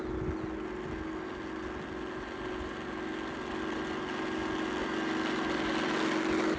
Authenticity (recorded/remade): recorded